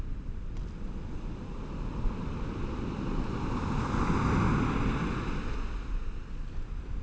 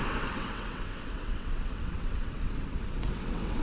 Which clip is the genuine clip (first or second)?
first